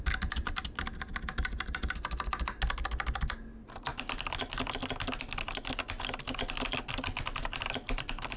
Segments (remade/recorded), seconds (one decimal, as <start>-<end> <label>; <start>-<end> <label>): 0.0-8.4 recorded